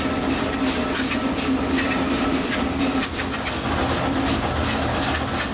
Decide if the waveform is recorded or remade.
recorded